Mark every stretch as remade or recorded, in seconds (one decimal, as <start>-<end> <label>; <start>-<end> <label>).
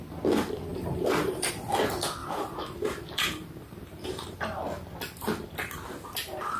0.0-0.7 recorded; 0.7-1.5 remade; 1.5-2.2 recorded; 2.2-4.4 remade; 4.4-6.6 recorded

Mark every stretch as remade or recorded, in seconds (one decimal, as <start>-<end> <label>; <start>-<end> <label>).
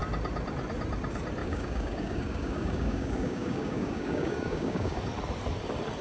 0.0-1.4 recorded; 1.4-5.0 remade; 5.0-6.0 recorded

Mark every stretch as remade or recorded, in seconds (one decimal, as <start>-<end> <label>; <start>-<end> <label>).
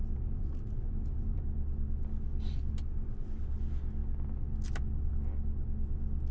0.0-1.4 remade; 1.4-6.3 recorded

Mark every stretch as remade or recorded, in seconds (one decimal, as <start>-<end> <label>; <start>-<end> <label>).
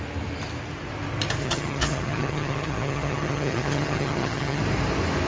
0.0-1.4 recorded; 1.4-4.6 remade; 4.6-5.3 recorded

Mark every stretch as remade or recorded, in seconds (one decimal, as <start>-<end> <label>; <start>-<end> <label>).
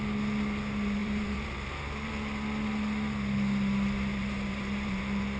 0.0-1.0 recorded; 1.0-2.1 remade; 2.1-4.1 recorded; 4.1-5.0 remade; 5.0-5.4 recorded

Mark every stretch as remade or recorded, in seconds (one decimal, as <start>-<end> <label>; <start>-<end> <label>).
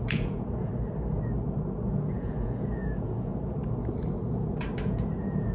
0.0-0.7 remade; 0.7-1.9 recorded; 1.9-3.3 remade; 3.3-4.8 recorded; 4.8-5.5 remade